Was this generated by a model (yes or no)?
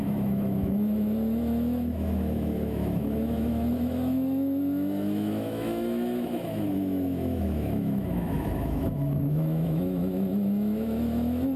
yes